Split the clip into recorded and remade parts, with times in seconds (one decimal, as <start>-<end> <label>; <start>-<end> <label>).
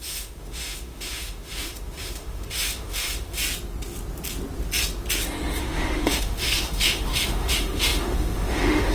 0.0-3.4 remade; 3.4-5.6 recorded; 5.6-8.9 remade